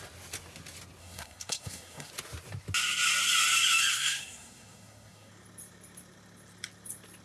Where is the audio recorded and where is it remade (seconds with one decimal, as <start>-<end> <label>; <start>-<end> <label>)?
0.0-1.0 recorded; 1.0-2.1 remade; 2.1-3.9 recorded; 3.9-5.3 remade; 5.3-7.2 recorded